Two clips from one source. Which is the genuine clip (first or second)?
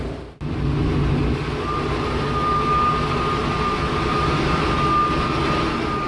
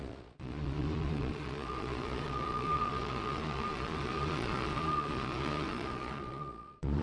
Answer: first